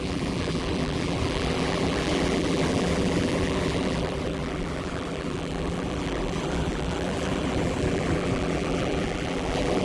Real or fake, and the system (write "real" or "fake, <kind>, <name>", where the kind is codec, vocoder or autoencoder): fake, vocoder, BigVGAN v2